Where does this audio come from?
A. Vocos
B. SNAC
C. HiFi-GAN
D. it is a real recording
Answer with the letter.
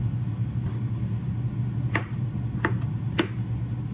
D